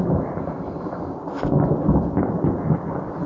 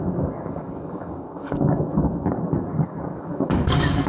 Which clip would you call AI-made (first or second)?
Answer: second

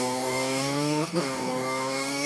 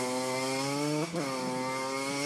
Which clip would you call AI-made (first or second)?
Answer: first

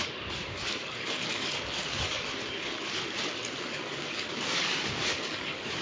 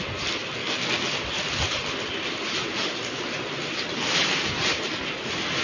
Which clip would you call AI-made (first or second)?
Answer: first